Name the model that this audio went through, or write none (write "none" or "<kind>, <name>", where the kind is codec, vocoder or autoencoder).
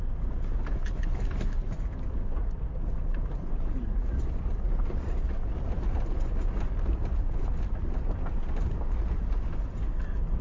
none